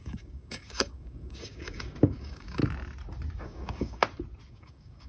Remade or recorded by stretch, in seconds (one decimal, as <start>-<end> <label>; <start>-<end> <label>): 0.0-2.6 remade; 2.6-3.4 recorded; 3.4-4.0 remade; 4.0-4.5 recorded; 4.5-5.1 remade